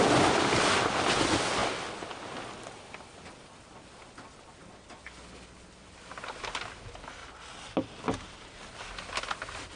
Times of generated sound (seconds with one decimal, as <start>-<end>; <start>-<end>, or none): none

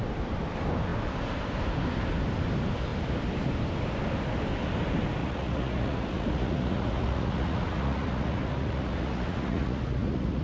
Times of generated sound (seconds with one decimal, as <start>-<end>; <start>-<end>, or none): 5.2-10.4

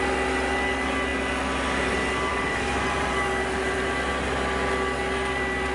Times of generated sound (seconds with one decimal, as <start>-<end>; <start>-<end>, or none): 2.3-3.1